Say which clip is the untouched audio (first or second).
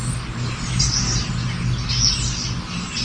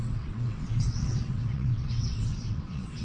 first